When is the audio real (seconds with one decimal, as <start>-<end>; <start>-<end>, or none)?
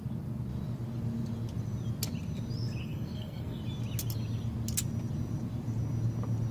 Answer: 0.0-2.8; 3.6-6.5